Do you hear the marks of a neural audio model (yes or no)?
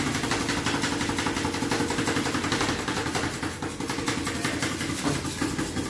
no